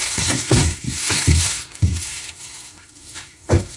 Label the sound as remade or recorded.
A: remade